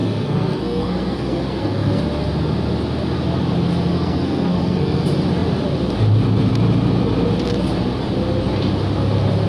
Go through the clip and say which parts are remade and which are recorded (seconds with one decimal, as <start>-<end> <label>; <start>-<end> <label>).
0.0-2.0 remade; 2.0-3.9 recorded; 3.9-5.0 remade; 5.0-9.5 recorded